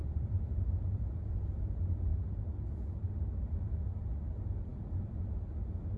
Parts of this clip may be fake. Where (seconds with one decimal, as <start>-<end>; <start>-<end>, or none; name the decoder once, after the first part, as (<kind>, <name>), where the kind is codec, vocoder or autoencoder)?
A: 0.0-1.1 (vocoder, BigVGAN v2); 2.1-3.5; 4.7-5.2